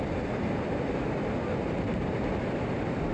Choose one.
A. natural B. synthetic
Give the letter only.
A